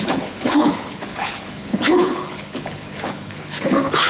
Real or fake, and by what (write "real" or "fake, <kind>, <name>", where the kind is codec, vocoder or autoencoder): fake, codec, HILCodec